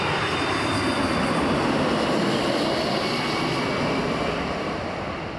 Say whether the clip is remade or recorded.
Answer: recorded